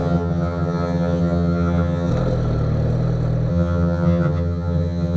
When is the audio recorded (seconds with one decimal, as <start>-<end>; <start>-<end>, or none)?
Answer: 2.1-3.5